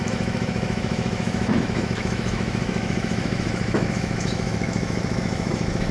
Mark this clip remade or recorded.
remade